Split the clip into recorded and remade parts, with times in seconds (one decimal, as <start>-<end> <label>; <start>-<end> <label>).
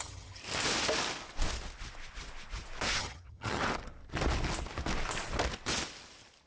0.0-0.4 remade; 0.4-3.0 recorded; 3.0-3.6 remade; 3.6-6.5 recorded